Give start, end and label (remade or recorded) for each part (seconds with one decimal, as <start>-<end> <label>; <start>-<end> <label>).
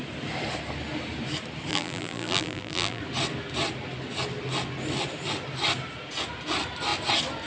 0.0-1.7 recorded; 1.7-3.0 remade; 3.0-7.5 recorded